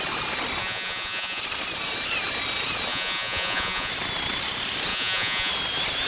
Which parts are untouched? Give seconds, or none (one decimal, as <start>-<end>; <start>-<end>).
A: 0.0-0.6; 1.4-2.9; 3.9-4.9; 5.5-6.1

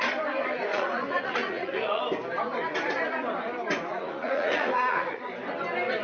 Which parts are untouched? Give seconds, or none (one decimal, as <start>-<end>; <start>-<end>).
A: 0.0-0.7; 2.0-3.9; 5.3-6.0

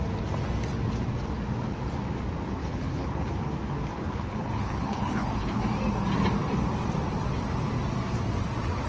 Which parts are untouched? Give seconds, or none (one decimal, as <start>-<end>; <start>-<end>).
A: 0.0-2.6; 3.2-3.9; 5.6-8.9